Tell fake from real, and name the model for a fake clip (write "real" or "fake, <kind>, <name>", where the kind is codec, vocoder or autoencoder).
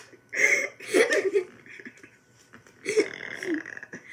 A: fake, vocoder, BigVGAN v2